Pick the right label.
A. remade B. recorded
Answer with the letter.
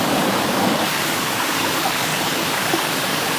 A